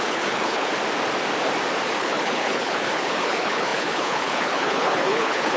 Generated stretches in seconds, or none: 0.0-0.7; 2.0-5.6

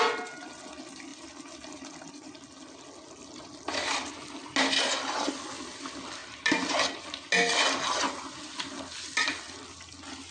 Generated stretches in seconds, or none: 1.1-4.1

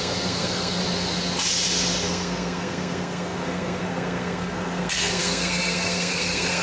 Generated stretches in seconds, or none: 0.0-0.8; 2.1-6.6